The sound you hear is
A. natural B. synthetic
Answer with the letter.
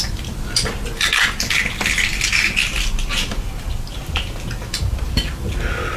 A